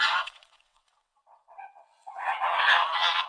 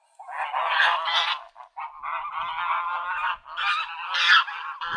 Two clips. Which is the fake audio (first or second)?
first